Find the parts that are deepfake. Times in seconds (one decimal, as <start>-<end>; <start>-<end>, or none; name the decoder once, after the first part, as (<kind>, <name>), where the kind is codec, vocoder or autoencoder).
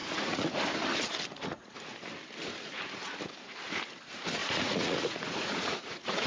0.0-0.6 (vocoder, Vocos); 1.3-1.8; 4.4-6.3